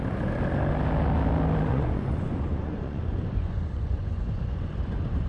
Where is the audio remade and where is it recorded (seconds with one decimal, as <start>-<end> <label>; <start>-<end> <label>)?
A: 0.0-1.7 recorded; 1.7-5.3 remade